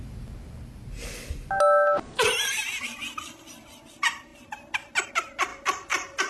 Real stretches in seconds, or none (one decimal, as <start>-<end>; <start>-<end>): 0.0-6.3